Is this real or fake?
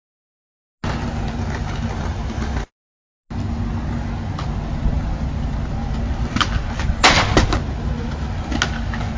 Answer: real